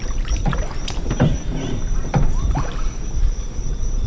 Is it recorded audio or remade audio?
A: remade